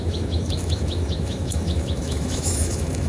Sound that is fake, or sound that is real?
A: fake